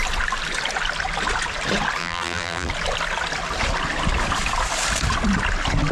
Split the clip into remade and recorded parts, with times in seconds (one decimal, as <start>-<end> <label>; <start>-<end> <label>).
0.0-2.0 recorded; 2.0-2.7 remade; 2.7-5.9 recorded